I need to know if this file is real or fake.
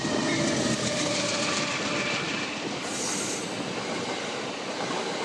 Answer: fake